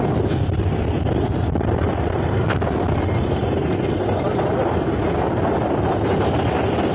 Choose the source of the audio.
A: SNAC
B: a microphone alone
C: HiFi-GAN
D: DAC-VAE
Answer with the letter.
B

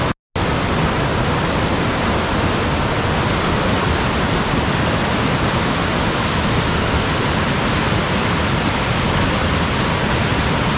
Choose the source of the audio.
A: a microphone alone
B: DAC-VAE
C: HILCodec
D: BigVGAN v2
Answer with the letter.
A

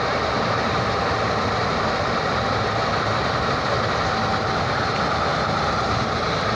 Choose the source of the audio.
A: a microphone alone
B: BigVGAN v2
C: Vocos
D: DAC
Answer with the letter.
B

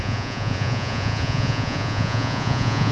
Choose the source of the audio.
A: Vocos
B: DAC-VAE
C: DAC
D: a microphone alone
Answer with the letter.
A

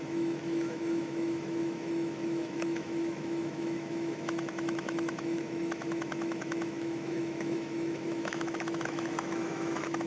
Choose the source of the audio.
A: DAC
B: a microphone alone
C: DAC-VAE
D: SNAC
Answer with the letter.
C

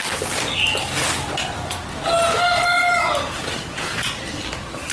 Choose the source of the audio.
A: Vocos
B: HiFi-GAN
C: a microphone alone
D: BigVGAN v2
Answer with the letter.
C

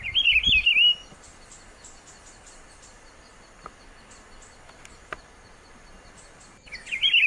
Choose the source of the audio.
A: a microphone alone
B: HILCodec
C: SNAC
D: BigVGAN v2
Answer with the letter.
A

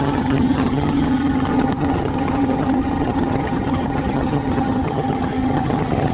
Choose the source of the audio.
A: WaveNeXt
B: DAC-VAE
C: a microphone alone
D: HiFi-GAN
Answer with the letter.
D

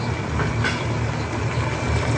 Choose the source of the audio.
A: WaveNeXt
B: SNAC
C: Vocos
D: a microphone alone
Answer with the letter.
D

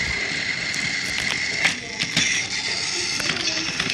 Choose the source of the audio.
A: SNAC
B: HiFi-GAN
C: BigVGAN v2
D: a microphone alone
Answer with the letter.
D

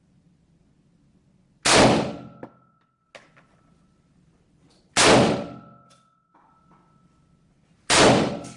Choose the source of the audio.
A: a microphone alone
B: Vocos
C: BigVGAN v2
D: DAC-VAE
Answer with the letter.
A